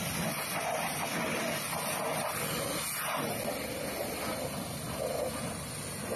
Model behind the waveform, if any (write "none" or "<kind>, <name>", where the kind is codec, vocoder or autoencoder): none